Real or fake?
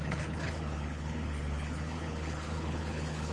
fake